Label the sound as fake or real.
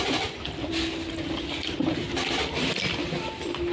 real